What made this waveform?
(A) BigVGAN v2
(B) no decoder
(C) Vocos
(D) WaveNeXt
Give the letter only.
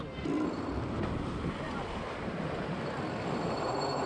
B